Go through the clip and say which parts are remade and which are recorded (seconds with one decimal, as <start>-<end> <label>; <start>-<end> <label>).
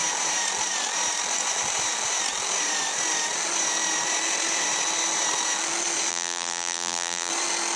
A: 0.0-6.1 recorded; 6.1-7.3 remade; 7.3-7.8 recorded